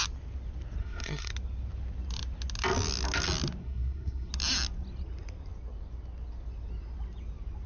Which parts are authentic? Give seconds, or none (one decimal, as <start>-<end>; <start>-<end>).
0.0-0.8; 1.3-3.6; 4.3-7.7